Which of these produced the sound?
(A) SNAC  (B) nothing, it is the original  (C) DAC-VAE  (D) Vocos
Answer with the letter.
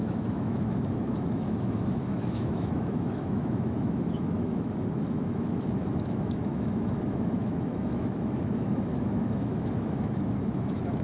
C